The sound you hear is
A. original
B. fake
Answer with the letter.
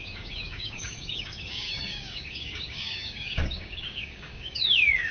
B